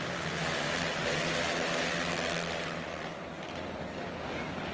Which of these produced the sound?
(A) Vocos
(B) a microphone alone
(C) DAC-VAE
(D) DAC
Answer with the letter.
B